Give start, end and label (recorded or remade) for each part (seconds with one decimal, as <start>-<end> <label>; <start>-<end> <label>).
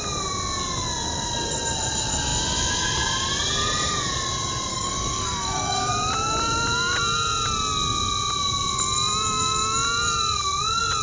0.0-4.7 recorded; 4.7-5.9 remade; 5.9-11.0 recorded